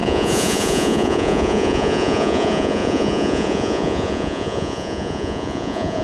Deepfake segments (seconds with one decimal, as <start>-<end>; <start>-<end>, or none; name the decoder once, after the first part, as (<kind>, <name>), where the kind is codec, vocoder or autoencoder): 0.0-6.0 (vocoder, Vocos)

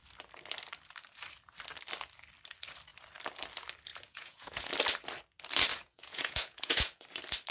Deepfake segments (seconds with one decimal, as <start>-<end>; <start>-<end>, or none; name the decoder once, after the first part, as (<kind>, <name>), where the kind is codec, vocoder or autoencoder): 3.9-4.7 (vocoder, Vocos); 5.7-7.0

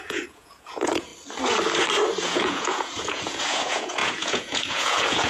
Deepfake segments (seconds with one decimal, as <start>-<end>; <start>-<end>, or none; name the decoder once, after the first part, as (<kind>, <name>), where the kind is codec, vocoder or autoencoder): 0.0-1.1 (vocoder, Vocos); 2.2-5.3

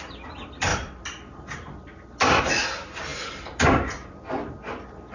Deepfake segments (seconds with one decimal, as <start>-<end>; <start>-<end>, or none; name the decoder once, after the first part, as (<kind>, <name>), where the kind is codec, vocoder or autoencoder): none